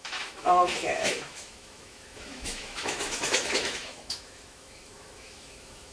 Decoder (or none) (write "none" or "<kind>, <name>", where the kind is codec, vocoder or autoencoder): autoencoder, DAC-VAE